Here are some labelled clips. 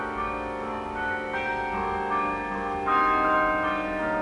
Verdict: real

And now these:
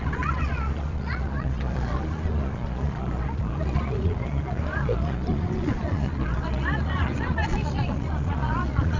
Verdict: fake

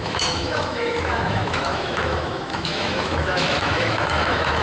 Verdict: fake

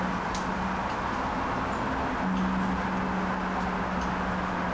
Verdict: real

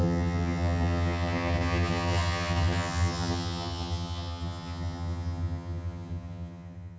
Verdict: fake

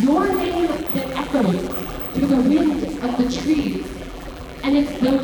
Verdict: fake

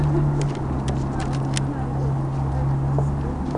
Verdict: real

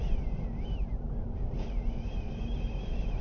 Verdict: real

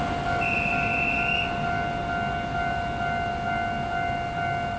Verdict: real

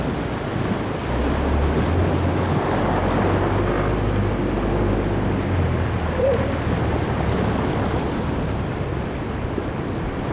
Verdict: real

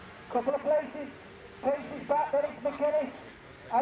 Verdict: real